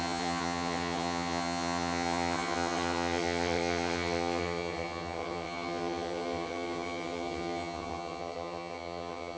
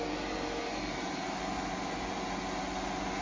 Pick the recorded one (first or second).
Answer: second